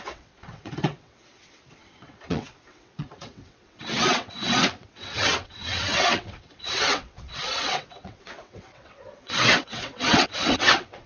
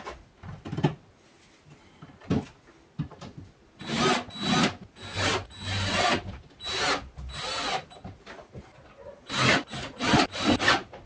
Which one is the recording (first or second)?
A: second